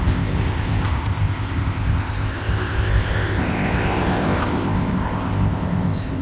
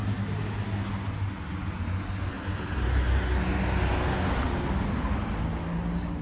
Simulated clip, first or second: first